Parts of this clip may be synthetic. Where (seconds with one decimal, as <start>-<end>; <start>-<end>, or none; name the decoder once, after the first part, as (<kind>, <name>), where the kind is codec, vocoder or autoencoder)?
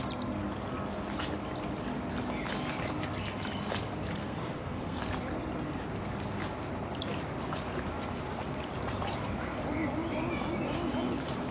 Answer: 4.2-5.0 (codec, SNAC)